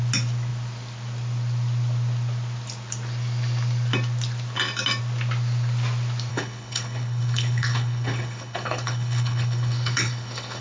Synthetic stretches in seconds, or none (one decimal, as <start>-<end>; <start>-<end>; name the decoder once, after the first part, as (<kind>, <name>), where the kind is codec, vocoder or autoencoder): 6.3-10.6 (codec, HILCodec)